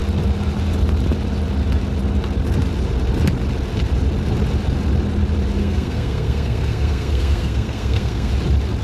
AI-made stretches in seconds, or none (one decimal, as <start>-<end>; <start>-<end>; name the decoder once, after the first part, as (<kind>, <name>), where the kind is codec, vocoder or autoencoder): 5.6-8.3 (codec, SNAC)